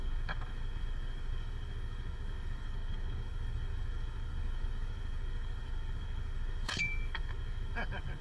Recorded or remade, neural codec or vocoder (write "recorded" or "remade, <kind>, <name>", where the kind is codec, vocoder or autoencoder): remade, codec, DAC